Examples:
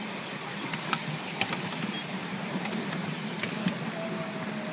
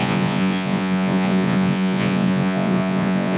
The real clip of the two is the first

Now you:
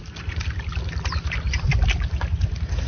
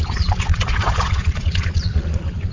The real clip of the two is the first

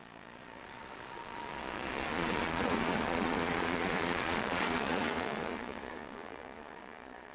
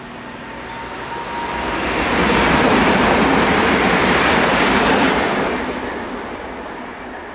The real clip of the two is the second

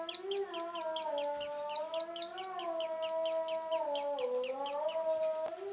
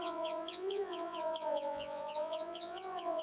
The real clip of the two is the first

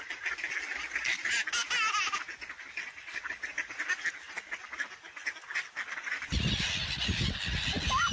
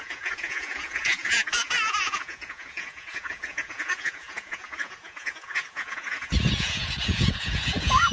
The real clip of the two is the first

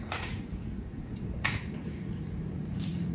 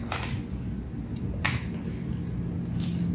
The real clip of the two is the second